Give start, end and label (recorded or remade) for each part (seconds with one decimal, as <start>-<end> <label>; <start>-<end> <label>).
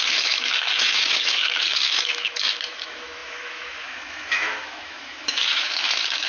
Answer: 0.0-6.3 remade